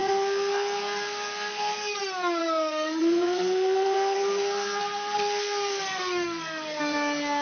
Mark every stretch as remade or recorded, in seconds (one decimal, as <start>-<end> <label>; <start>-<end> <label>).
0.0-2.0 remade; 2.0-2.4 recorded; 2.4-6.8 remade; 6.8-7.4 recorded